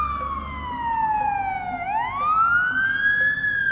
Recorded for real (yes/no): yes